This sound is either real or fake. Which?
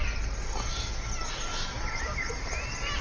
real